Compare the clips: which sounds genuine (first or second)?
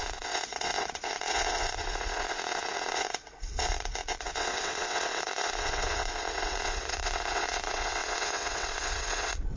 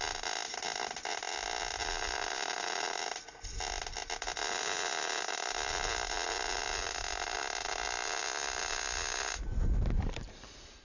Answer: second